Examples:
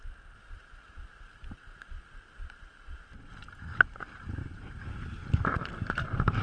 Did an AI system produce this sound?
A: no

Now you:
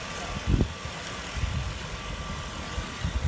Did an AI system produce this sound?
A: no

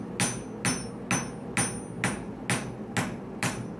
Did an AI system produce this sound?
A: no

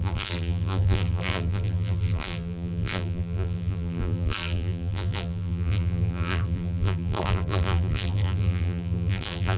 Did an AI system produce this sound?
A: yes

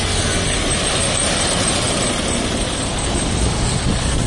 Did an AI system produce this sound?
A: no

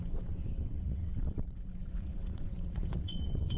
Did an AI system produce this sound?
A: yes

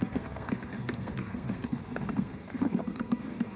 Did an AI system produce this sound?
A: yes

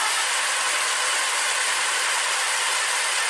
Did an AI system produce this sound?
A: yes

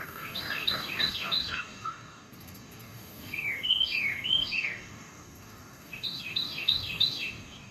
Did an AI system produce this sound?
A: yes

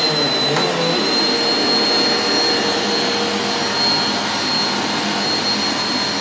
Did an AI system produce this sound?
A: no